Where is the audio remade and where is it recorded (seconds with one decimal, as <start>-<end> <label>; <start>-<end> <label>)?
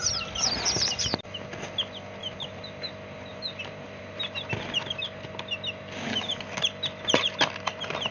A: 0.0-2.2 recorded; 2.2-2.9 remade; 2.9-3.3 recorded; 3.3-4.5 remade; 4.5-8.1 recorded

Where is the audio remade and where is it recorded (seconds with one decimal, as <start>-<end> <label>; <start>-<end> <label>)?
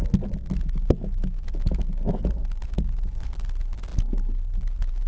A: 0.0-5.1 recorded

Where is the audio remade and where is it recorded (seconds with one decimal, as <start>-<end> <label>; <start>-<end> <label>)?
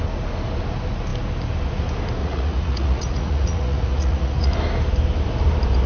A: 0.0-2.2 recorded; 2.2-4.5 remade; 4.5-5.9 recorded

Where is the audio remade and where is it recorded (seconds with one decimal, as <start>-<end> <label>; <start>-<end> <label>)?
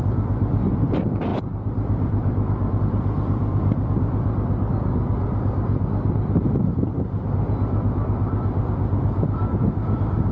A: 0.0-1.3 recorded; 1.3-2.8 remade; 2.8-10.3 recorded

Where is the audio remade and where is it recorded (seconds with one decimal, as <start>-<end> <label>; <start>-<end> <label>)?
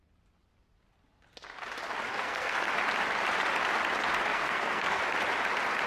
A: 0.0-2.1 recorded; 2.1-2.7 remade; 2.7-4.3 recorded; 4.3-5.0 remade; 5.0-5.9 recorded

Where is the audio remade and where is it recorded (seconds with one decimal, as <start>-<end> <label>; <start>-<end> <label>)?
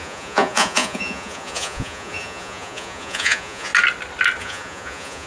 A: 0.0-3.7 remade; 3.7-4.4 recorded; 4.4-5.3 remade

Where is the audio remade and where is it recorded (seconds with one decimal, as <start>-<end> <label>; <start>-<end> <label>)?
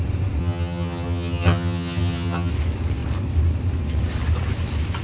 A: 0.0-0.4 recorded; 0.4-2.5 remade; 2.5-5.0 recorded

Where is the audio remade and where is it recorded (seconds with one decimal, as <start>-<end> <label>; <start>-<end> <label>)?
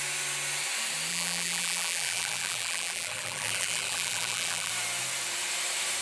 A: 0.0-1.1 recorded; 1.1-4.7 remade; 4.7-6.0 recorded